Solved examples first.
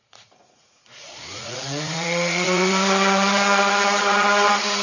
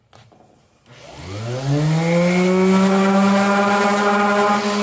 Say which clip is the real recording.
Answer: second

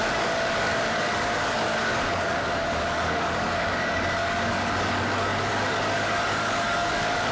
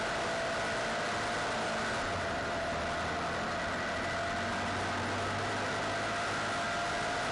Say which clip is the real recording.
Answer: second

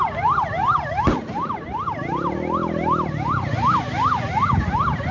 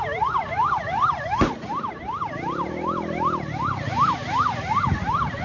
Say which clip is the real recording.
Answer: first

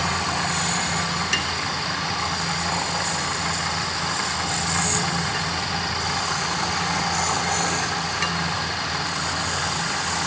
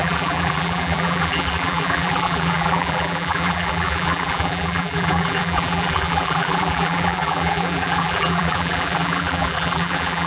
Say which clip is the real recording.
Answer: first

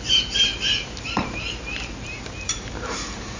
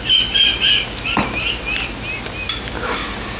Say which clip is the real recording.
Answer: second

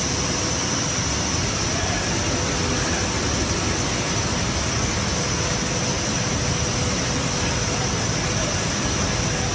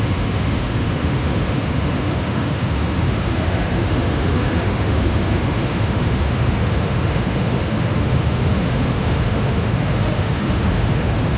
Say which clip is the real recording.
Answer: first